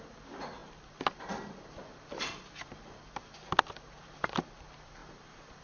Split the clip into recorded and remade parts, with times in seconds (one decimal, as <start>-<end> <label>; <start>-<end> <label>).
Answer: 0.0-5.0 recorded; 5.0-5.6 remade